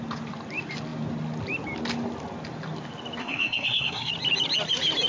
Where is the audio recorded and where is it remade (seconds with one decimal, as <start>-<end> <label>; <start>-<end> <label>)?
0.0-3.2 recorded; 3.2-4.1 remade; 4.1-5.1 recorded